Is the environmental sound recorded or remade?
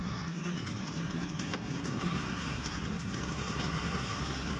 remade